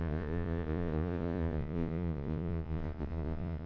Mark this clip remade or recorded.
remade